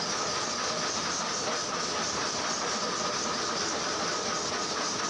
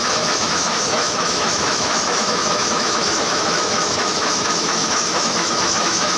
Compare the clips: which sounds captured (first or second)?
first